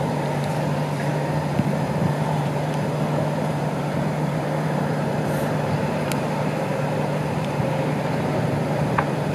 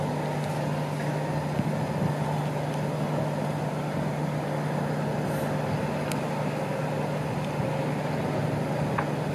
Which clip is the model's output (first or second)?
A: first